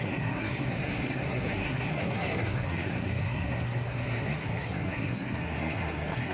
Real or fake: fake